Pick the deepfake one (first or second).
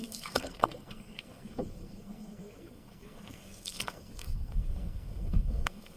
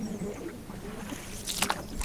first